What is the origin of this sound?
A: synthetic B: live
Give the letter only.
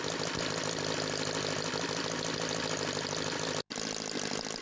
B